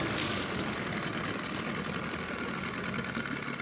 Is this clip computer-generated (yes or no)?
no